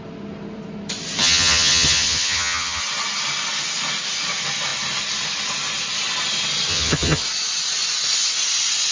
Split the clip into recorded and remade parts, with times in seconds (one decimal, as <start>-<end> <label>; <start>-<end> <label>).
0.0-1.2 recorded; 1.2-2.8 remade; 2.8-6.7 recorded; 6.7-7.2 remade; 7.2-8.9 recorded